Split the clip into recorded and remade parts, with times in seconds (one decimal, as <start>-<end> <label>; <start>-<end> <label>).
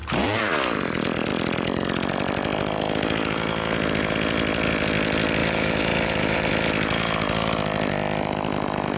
0.0-0.5 remade; 0.5-5.4 recorded; 5.4-6.5 remade; 6.5-9.0 recorded